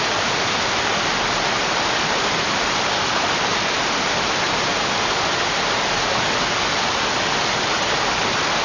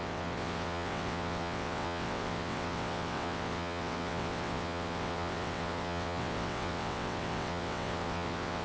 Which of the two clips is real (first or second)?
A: first